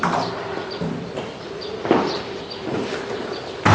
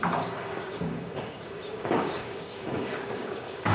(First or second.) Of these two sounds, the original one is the first